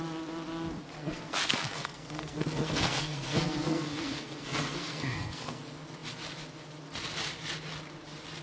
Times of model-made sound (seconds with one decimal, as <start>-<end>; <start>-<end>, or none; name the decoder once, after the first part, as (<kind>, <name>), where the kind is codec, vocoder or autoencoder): 1.0-5.6 (codec, SNAC)